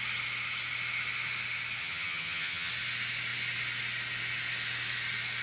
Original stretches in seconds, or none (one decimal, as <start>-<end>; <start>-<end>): 0.0-1.8; 2.7-5.4